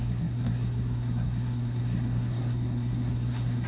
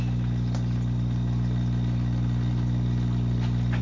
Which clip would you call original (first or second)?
second